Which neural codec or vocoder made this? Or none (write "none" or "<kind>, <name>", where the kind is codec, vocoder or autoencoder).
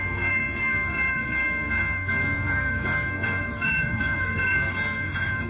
codec, SNAC